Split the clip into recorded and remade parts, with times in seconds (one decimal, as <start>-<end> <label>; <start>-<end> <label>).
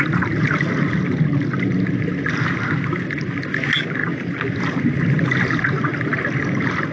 0.0-6.9 recorded